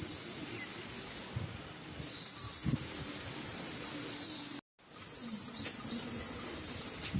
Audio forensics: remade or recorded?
recorded